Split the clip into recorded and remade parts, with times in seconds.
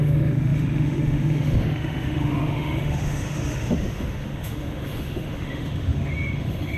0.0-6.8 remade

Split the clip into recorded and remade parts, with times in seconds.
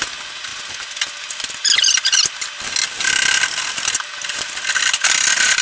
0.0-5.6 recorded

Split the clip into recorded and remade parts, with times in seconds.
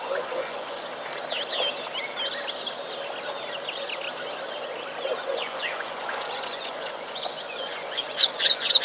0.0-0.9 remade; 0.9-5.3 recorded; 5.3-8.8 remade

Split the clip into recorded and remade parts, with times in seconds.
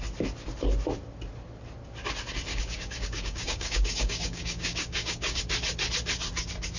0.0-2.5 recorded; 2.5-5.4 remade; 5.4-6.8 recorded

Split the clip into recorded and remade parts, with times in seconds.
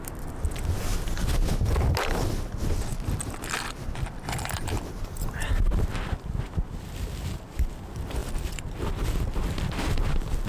0.0-0.9 remade; 0.9-5.0 recorded; 5.0-10.5 remade